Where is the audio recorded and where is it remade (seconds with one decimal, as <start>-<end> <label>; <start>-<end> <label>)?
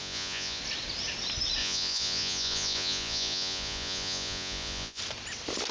0.0-0.6 remade; 0.6-1.6 recorded; 1.6-5.0 remade; 5.0-5.7 recorded